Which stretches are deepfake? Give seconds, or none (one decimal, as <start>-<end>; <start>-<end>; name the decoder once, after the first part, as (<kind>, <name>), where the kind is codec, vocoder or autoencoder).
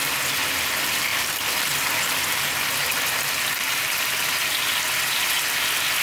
none